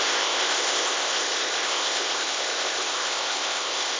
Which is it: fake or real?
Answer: fake